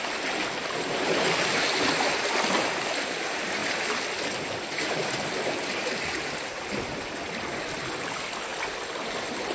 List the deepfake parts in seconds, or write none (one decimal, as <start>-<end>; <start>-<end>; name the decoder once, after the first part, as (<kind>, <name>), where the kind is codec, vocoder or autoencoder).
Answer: none